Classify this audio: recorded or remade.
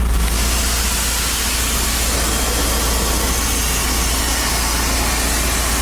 recorded